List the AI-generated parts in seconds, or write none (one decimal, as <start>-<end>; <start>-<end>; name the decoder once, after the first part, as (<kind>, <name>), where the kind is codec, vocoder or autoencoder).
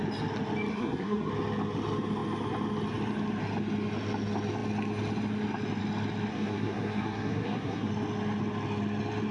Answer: 0.7-1.3 (codec, SNAC); 6.3-7.9